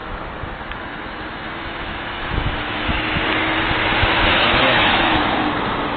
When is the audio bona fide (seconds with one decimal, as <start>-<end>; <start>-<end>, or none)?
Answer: 3.2-4.3; 5.3-6.0